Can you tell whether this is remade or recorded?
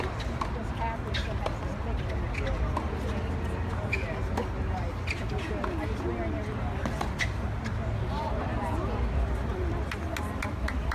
recorded